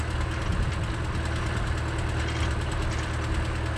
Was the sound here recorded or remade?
recorded